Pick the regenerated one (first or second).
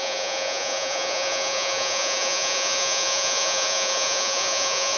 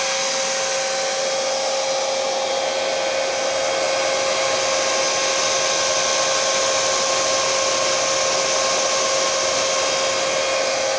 first